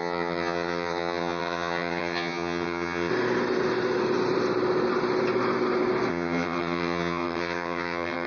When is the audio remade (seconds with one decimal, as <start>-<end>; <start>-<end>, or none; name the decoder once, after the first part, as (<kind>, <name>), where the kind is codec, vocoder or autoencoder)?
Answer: 0.0-3.1 (vocoder, HiFi-GAN); 6.1-8.3